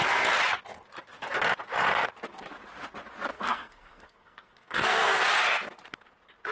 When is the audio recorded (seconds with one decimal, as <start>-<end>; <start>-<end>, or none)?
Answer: 0.0-3.3; 5.2-6.5